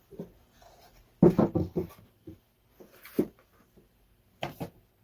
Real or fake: real